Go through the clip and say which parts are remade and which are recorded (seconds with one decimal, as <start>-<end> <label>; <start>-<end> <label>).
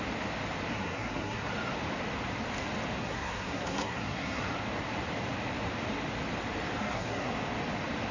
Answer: 0.0-0.7 recorded; 0.7-1.5 remade; 1.5-3.0 recorded; 3.0-4.5 remade; 4.5-6.8 recorded; 6.8-7.3 remade; 7.3-8.1 recorded